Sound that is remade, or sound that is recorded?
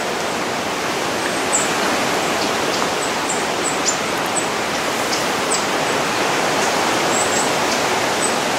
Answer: recorded